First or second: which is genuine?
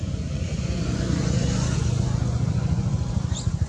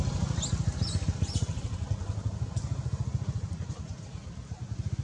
second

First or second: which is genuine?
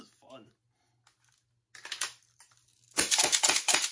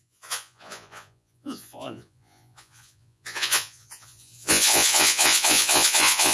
first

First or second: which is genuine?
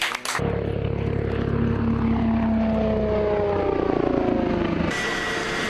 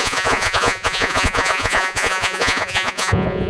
first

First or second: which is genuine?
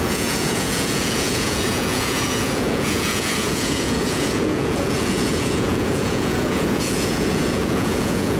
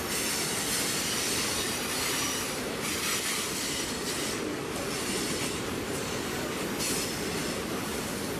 second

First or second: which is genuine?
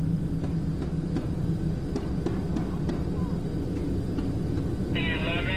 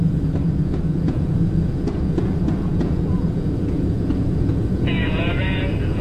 first